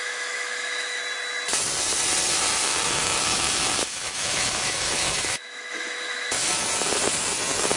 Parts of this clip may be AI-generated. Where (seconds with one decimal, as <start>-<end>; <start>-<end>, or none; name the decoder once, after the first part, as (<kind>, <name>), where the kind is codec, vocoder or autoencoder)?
0.0-1.0 (autoencoder, DAC-VAE); 2.6-6.4